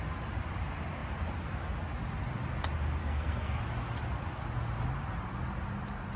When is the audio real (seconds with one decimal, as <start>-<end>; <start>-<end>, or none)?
0.0-3.0; 3.6-6.2